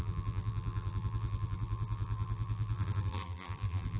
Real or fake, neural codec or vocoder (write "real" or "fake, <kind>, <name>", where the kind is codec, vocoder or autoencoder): fake, vocoder, BigVGAN v2